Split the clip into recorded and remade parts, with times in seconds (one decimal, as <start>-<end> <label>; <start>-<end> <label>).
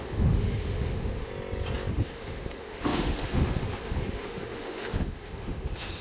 0.0-1.3 remade; 1.3-1.9 recorded; 1.9-6.0 remade